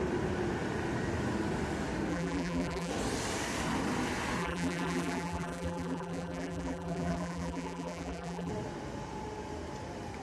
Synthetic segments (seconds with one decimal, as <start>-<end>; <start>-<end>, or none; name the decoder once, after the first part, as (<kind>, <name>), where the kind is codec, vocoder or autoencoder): 2.1-2.9 (vocoder, BigVGAN v2); 4.4-8.5